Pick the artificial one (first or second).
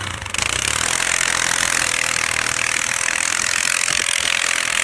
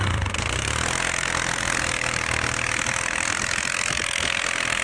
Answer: first